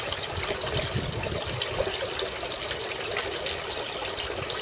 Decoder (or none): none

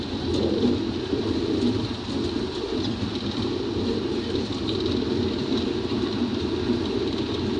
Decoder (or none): none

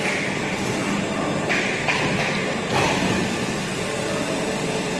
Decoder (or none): none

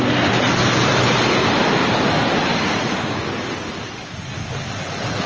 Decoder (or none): none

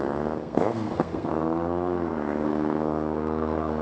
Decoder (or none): codec, SNAC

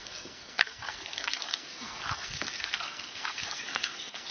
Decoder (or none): codec, SNAC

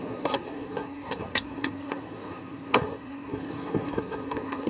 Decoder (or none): codec, SNAC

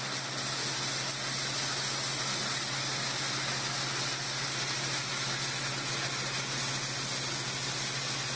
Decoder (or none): none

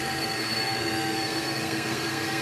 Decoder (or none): codec, SNAC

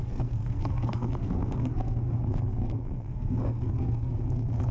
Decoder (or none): codec, SNAC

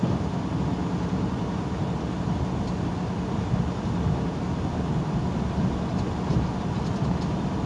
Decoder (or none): none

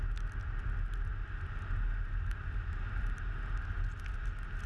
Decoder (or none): none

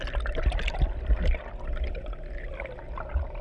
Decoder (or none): none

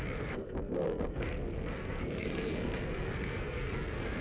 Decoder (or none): codec, SNAC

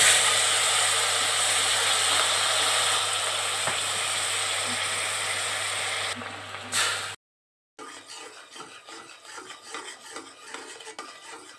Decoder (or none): none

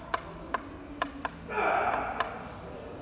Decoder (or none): none